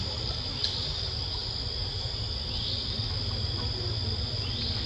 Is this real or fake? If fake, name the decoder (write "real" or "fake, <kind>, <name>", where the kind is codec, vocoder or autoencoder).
real